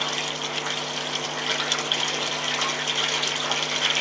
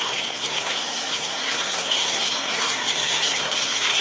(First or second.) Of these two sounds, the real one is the first